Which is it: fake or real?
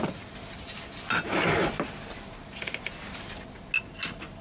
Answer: real